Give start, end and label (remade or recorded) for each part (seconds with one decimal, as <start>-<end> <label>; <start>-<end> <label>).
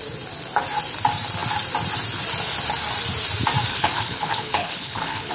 0.0-3.7 recorded; 3.7-5.3 remade